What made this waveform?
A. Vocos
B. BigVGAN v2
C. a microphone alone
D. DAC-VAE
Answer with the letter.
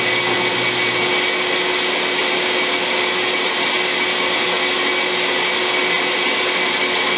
C